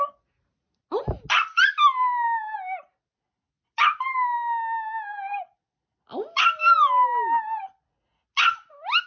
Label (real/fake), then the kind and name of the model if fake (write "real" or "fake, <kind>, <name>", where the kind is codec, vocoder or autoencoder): real